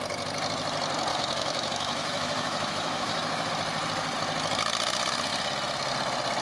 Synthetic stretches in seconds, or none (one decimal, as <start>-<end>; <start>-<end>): 1.1-3.5

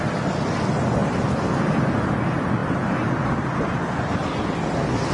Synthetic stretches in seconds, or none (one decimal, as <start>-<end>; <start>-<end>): none

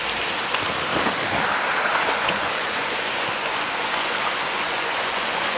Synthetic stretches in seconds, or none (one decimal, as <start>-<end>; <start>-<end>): 1.9-5.6

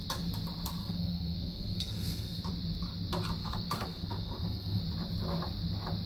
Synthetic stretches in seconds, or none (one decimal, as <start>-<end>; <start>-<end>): 0.8-2.4; 3.4-4.8

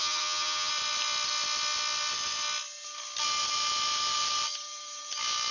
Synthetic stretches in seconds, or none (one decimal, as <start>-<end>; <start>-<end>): 0.0-0.7

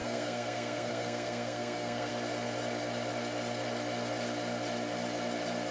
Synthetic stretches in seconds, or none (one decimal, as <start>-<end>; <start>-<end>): 0.0-2.1

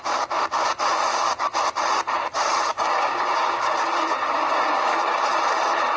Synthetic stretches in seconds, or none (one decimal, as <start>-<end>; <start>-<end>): 2.7-5.3